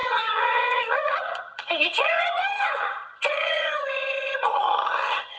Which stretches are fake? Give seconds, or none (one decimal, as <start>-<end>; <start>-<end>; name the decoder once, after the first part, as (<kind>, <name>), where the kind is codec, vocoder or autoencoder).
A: 0.0-5.4 (vocoder, HiFi-GAN)

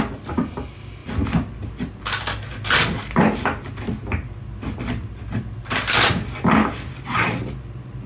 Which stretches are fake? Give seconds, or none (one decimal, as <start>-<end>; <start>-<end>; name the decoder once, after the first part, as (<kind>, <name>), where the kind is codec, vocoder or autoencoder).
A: none

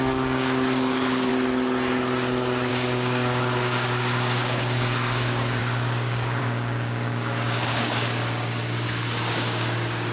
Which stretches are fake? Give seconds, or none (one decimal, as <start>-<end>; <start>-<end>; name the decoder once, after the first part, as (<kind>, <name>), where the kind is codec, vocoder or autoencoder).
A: 0.0-1.3 (codec, DAC); 2.7-10.1

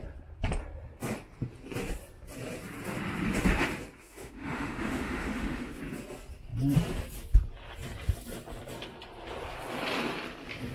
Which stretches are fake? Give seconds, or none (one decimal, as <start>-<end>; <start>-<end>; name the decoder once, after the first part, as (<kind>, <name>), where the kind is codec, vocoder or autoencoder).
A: 4.0-5.8 (autoencoder, DAC-VAE)

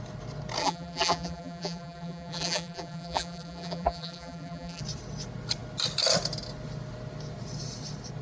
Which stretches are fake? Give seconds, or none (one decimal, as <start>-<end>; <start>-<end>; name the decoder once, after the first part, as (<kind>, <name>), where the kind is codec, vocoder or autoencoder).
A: 0.6-4.8 (vocoder, BigVGAN v2)